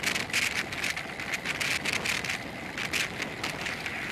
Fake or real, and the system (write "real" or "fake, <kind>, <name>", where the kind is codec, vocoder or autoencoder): real